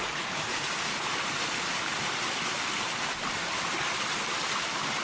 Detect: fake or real real